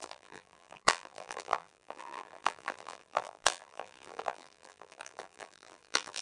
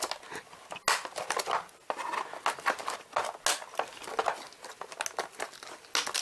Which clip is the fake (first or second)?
first